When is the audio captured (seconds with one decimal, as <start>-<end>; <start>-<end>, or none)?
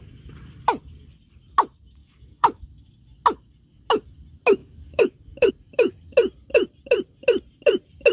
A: 0.0-2.0; 2.6-4.6; 5.5-8.1